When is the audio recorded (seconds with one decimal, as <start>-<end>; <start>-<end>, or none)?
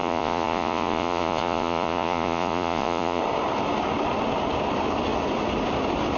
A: 3.2-6.2